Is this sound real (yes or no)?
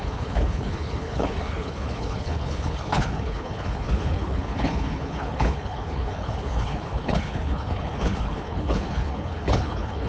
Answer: no